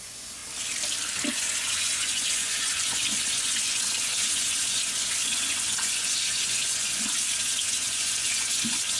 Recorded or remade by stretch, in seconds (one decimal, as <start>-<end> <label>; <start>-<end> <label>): 0.0-0.4 remade; 0.4-1.3 recorded; 1.3-9.0 remade